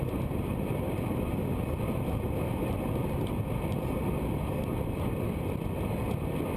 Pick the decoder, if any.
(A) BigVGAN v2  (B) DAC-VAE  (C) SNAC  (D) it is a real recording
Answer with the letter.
D